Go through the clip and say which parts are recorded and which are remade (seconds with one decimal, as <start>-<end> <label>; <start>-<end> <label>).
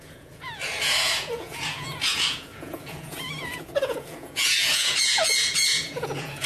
0.0-6.5 remade